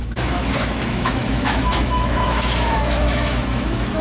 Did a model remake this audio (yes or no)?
yes